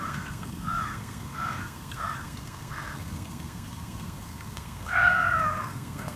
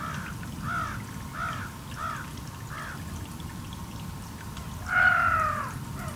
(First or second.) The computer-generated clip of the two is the first